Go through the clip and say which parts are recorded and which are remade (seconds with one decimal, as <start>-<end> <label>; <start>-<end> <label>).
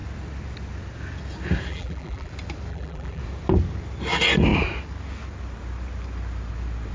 0.0-1.7 recorded; 1.7-2.3 remade; 2.3-2.7 recorded; 2.7-3.2 remade; 3.2-6.9 recorded